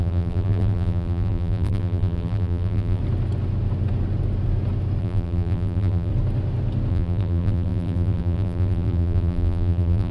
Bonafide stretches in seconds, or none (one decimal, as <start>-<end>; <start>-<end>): 3.0-5.0; 6.1-6.9